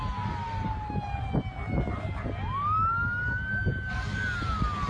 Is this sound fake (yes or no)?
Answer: no